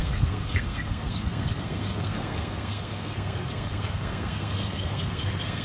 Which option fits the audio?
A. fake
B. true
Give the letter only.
A